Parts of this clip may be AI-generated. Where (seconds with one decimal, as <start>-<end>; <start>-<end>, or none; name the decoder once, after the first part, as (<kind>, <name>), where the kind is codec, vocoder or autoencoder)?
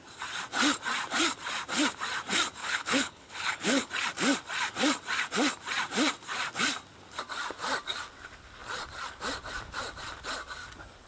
2.6-3.9 (codec, HILCodec)